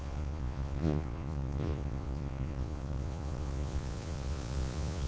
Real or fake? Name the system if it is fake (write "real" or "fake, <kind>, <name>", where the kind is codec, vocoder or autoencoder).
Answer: fake, vocoder, Vocos